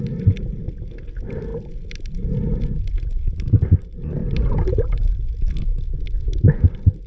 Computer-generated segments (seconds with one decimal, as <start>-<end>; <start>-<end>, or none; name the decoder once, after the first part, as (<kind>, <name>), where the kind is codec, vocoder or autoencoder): none